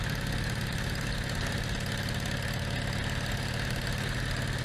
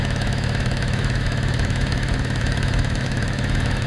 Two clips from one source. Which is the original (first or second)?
first